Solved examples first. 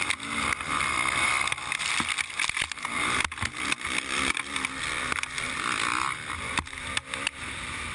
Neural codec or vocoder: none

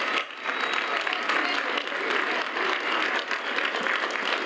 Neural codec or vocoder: none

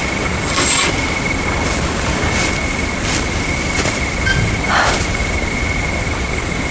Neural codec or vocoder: vocoder, BigVGAN v2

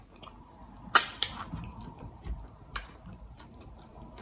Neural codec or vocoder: vocoder, BigVGAN v2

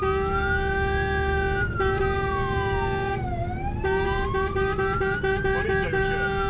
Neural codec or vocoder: none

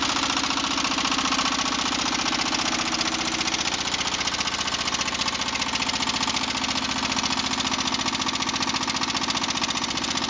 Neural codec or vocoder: none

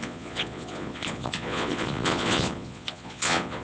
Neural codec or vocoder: vocoder, Vocos